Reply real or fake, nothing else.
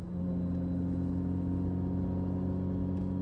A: real